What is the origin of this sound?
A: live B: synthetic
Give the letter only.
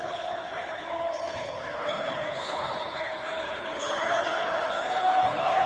B